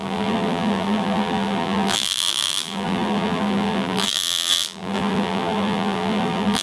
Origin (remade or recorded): remade